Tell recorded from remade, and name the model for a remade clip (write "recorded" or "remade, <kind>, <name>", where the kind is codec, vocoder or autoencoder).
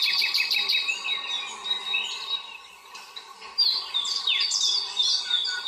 recorded